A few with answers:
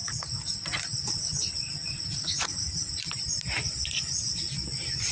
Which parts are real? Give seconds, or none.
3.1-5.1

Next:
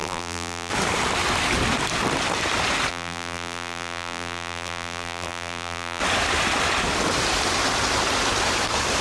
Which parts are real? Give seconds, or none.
0.7-2.9; 6.0-9.0

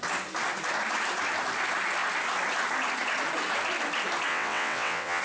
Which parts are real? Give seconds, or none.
0.0-4.3

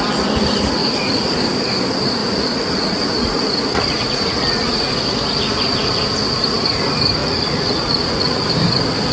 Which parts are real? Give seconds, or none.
0.0-0.8; 1.4-2.2; 4.9-7.2; 8.5-9.1